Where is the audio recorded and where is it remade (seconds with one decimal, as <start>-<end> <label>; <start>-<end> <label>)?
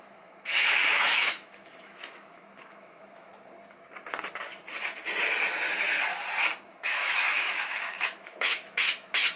0.0-3.3 remade; 3.3-6.7 recorded; 6.7-9.4 remade